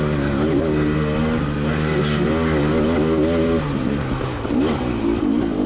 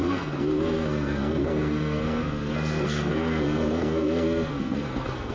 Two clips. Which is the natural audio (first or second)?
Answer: first